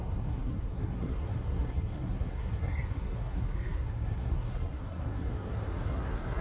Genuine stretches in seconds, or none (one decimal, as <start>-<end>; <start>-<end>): none